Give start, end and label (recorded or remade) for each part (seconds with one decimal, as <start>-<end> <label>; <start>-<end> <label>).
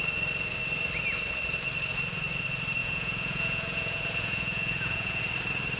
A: 0.0-2.8 recorded; 2.8-5.2 remade; 5.2-5.8 recorded